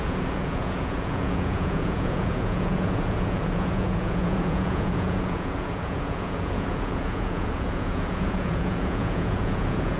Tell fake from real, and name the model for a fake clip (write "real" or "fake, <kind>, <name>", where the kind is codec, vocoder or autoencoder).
fake, vocoder, Vocos